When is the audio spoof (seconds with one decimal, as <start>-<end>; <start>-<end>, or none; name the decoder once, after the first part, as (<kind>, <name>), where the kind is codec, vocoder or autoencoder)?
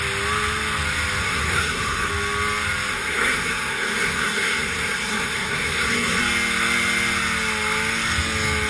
1.2-2.1 (codec, SNAC); 2.9-6.2